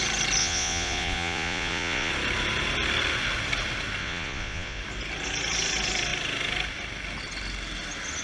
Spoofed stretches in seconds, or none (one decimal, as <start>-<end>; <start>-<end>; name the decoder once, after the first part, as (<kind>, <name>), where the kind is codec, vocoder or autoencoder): 0.4-2.1 (vocoder, Vocos); 4.0-4.8